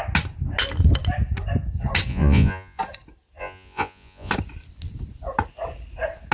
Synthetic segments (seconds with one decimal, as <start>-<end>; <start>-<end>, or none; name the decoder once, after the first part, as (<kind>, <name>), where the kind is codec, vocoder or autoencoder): 2.1-2.8 (vocoder, Vocos); 3.4-4.3